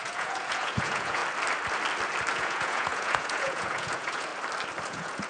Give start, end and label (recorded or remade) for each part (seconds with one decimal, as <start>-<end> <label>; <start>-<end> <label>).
0.0-1.2 remade; 1.2-2.3 recorded; 2.3-4.3 remade; 4.3-4.8 recorded; 4.8-5.3 remade